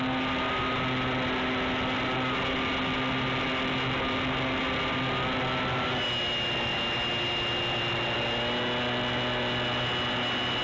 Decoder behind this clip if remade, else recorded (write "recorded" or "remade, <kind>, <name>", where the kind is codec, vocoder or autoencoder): recorded